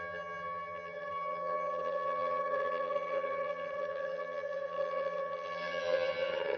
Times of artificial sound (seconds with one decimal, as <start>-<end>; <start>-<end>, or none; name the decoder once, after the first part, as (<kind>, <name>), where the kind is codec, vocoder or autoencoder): 0.0-6.6 (vocoder, HiFi-GAN)